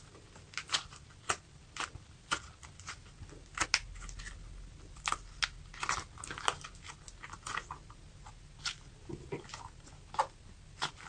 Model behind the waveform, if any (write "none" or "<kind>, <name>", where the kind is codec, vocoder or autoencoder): none